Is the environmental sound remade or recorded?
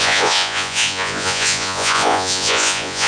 remade